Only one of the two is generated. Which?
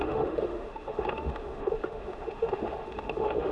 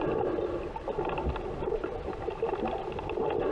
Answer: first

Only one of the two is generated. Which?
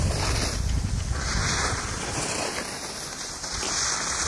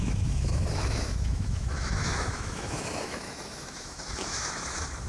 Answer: second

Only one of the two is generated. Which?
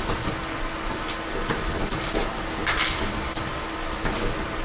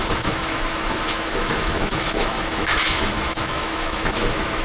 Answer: second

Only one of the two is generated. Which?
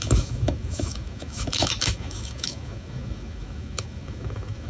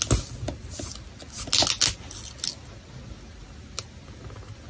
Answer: first